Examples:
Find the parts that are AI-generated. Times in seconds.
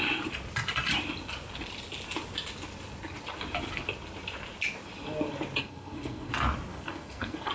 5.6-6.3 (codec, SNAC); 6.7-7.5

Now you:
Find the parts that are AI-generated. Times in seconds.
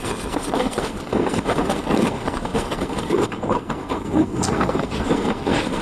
0.0-5.8 (codec, SNAC)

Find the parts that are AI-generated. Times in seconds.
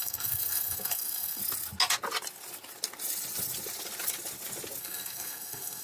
0.0-1.4 (codec, SNAC); 4.8-5.8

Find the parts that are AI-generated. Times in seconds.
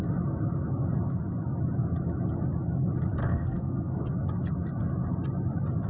3.2-4.0 (codec, SNAC)